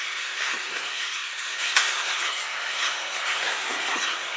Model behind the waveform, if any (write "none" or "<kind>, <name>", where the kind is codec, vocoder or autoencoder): codec, SNAC